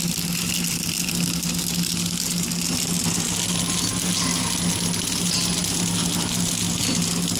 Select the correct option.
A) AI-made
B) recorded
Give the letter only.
B